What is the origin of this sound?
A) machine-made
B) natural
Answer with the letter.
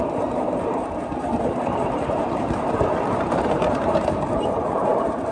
A